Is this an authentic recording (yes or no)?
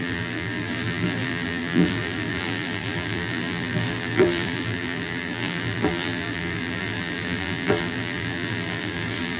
no